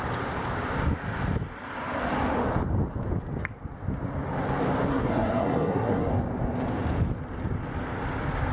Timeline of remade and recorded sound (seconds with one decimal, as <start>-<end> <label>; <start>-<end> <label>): 0.0-4.9 recorded; 4.9-6.1 remade; 6.1-8.5 recorded